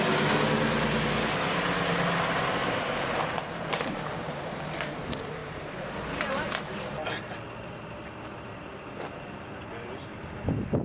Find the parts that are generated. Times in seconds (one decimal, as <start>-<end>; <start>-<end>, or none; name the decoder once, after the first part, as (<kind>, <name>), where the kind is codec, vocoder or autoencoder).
2.6-4.5 (vocoder, BigVGAN v2); 5.4-6.6